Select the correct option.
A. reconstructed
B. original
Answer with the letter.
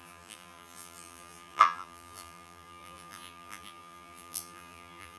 A